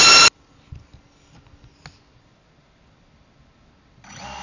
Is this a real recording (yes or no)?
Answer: yes